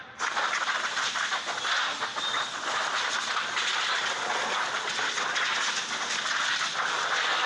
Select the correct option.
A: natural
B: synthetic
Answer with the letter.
A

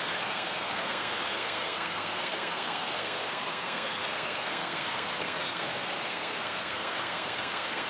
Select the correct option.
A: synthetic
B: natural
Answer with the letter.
A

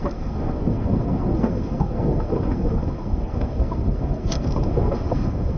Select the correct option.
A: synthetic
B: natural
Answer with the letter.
A